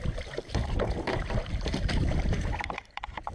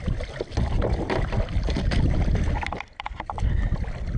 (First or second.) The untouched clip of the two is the second